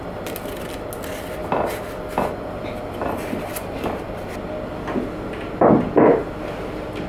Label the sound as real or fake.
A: real